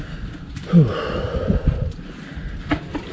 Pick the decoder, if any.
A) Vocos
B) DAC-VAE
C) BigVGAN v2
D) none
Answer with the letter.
D